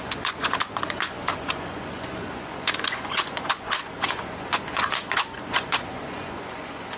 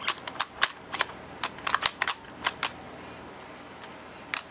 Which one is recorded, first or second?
second